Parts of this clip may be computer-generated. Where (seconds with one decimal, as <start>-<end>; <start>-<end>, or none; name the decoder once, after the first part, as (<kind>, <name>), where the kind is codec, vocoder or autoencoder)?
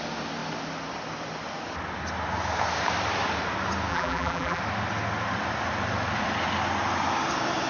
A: 3.9-4.6 (vocoder, BigVGAN v2)